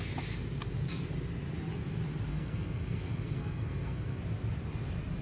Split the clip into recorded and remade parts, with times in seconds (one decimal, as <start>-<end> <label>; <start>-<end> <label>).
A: 0.0-2.3 recorded; 2.3-4.2 remade; 4.2-5.2 recorded